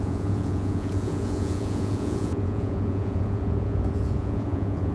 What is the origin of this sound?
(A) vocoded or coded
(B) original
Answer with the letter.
A